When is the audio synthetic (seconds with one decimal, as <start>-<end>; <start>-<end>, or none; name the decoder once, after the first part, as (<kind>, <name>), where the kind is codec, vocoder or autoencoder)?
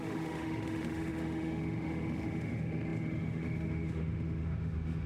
0.0-5.1 (autoencoder, DAC-VAE)